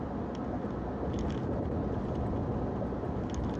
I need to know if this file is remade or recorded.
recorded